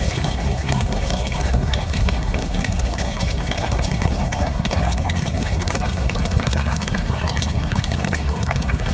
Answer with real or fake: fake